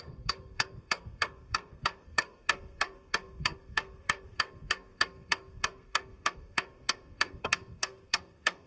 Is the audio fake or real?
fake